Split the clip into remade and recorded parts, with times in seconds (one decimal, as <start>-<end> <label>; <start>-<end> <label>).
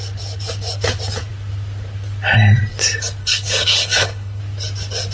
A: 0.0-3.2 recorded; 3.2-4.4 remade; 4.4-5.1 recorded